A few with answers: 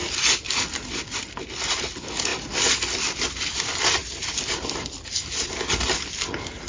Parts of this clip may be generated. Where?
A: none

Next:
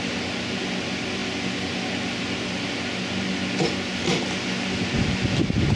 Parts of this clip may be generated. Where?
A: none

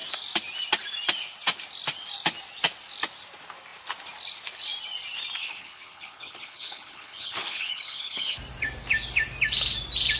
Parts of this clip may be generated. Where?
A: 5.4-8.4 (codec, HILCodec)